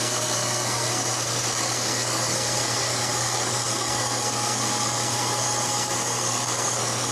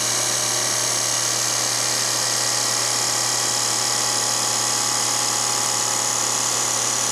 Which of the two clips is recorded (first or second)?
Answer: second